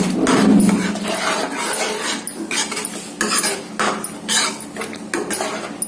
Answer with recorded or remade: recorded